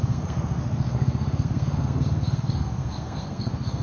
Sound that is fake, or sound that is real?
fake